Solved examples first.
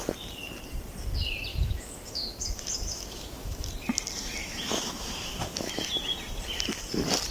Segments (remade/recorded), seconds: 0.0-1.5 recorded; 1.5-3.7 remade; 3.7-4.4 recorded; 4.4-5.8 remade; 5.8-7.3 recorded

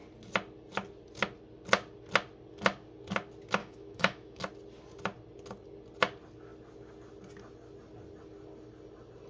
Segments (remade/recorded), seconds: 0.0-3.6 recorded; 3.6-4.4 remade; 4.4-9.3 recorded

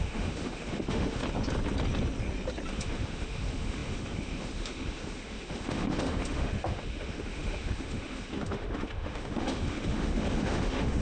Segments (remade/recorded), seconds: 0.0-1.2 remade; 1.2-2.7 recorded; 2.7-11.0 remade

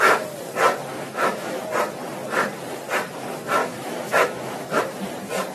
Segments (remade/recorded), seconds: 0.0-0.9 recorded; 0.9-1.6 remade; 1.6-3.6 recorded; 3.6-4.8 remade; 4.8-5.5 recorded

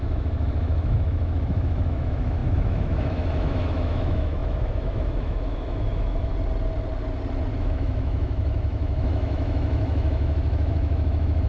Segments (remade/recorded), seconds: 0.0-6.3 remade; 6.3-7.6 recorded; 7.6-11.5 remade

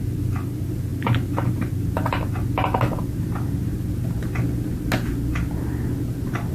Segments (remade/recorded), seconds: 0.0-6.5 recorded

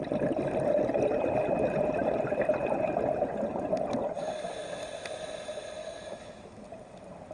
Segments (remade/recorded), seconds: 0.0-5.8 recorded; 5.8-6.6 remade; 6.6-7.3 recorded